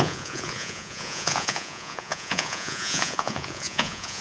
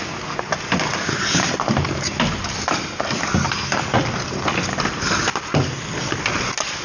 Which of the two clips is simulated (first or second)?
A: first